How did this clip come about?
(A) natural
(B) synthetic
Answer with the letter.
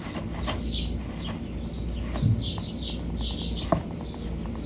A